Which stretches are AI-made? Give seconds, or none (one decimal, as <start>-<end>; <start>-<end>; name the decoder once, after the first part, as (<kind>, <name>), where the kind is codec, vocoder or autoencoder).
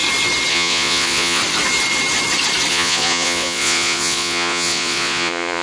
0.5-1.4 (vocoder, Vocos); 2.7-5.6